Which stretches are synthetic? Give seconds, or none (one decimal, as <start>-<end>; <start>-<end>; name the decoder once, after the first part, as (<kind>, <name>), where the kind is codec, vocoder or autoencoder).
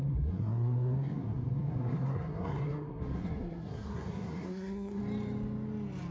0.0-5.0 (codec, SNAC)